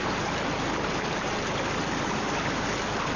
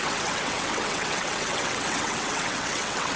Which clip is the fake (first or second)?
second